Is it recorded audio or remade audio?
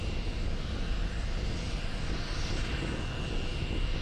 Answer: recorded